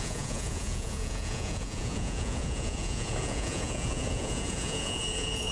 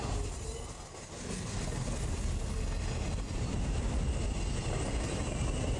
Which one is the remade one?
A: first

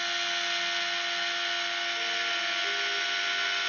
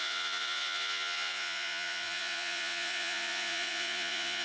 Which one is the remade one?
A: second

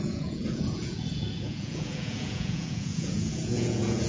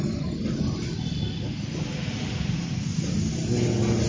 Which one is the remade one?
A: first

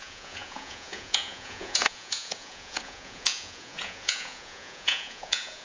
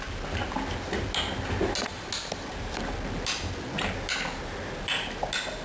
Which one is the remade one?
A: first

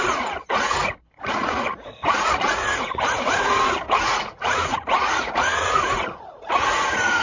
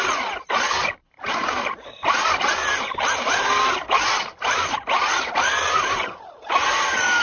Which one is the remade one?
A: first